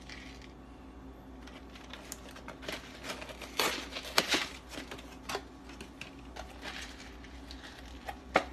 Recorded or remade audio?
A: recorded